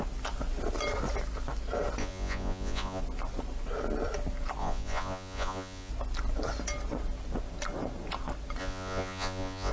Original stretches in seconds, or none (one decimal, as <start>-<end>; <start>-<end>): 0.0-2.0; 3.0-4.6; 5.9-8.6